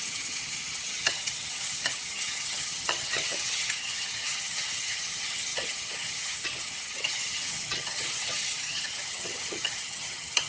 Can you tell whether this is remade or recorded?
remade